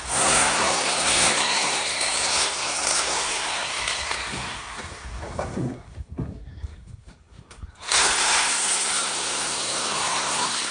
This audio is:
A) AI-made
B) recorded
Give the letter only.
A